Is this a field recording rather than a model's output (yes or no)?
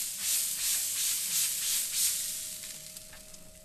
yes